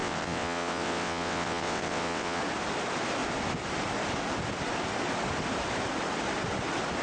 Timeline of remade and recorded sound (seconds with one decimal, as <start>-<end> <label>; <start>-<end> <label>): 0.0-2.4 remade; 2.4-7.0 recorded